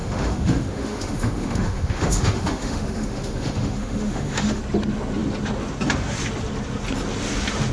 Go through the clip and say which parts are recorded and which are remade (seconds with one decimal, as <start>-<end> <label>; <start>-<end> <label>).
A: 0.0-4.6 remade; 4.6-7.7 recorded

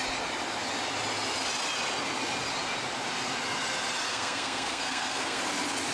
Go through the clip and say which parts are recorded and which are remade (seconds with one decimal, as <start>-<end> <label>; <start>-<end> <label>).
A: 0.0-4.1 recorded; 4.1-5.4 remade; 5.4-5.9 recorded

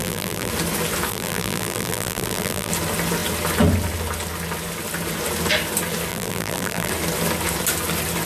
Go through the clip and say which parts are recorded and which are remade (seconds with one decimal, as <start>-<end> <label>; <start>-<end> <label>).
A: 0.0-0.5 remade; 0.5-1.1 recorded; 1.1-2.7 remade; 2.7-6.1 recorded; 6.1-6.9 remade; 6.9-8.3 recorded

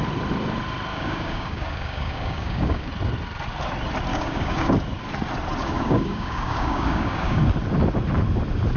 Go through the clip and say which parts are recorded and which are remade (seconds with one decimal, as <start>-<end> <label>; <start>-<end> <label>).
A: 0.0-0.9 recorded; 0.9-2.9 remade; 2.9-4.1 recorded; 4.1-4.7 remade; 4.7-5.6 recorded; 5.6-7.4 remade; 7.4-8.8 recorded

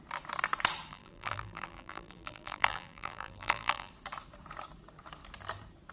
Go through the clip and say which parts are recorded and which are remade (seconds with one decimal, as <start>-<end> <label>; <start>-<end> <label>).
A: 0.0-0.9 recorded; 0.9-3.9 remade; 3.9-5.9 recorded

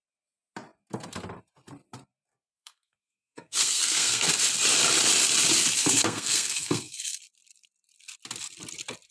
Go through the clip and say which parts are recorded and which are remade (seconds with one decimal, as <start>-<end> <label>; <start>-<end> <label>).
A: 0.0-2.3 recorded; 2.3-4.3 remade; 4.3-5.8 recorded; 5.8-7.2 remade; 7.2-9.1 recorded

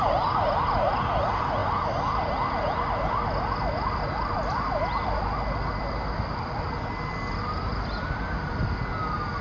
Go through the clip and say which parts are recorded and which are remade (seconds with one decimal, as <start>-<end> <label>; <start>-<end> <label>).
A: 0.0-9.4 recorded

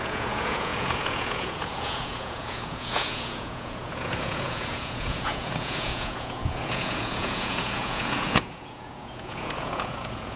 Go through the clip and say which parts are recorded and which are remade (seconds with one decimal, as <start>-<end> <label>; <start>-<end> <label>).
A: 0.0-10.4 remade